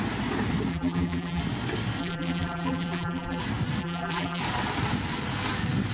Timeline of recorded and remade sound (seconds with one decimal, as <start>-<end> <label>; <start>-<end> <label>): 0.0-0.7 recorded; 0.7-1.4 remade; 1.4-2.0 recorded; 2.0-3.4 remade; 3.4-3.8 recorded; 3.8-4.4 remade; 4.4-5.9 recorded